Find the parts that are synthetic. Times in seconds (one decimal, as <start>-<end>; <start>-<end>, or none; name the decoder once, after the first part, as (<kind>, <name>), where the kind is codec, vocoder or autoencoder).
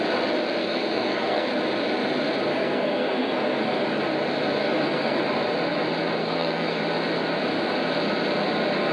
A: 0.6-1.5 (codec, SNAC); 2.5-3.6; 4.6-5.2; 6.2-6.8